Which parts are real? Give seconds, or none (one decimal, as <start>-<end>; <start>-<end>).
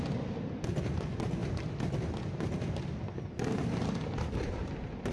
0.0-5.1